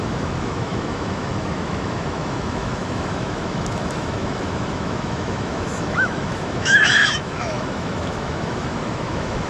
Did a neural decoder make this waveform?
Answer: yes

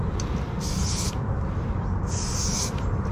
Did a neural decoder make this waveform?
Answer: no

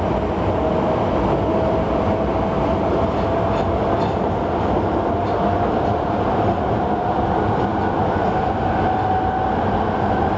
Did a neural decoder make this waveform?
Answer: no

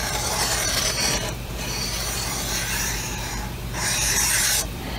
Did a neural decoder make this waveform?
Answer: yes